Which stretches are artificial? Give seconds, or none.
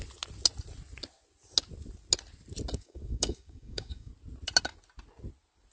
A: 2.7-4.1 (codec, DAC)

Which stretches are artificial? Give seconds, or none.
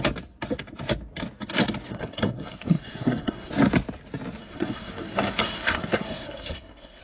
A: 1.9-3.5 (codec, SNAC); 4.4-7.0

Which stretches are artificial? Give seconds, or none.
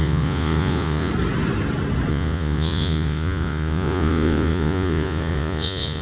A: 0.0-1.1 (vocoder, Vocos); 2.1-6.0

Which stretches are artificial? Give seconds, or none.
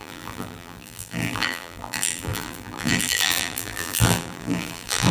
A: 0.0-5.1 (vocoder, BigVGAN v2)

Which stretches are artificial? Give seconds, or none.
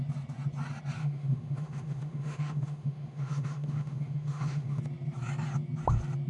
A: 1.0-4.8 (autoencoder, DAC-VAE)